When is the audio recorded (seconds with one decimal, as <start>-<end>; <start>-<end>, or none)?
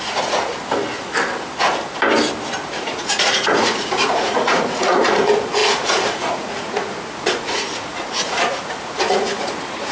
0.5-2.8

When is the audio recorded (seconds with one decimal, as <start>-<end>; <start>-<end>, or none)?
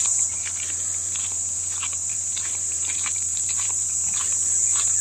0.0-2.0; 3.4-5.0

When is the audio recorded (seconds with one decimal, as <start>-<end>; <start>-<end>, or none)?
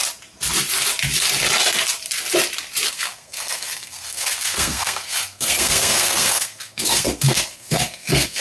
0.0-2.9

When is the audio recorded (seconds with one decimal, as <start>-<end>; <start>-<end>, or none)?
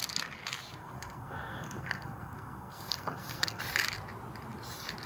0.0-0.8; 3.6-5.1